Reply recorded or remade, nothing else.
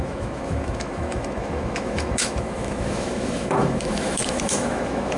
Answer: remade